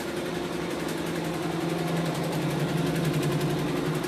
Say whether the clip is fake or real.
real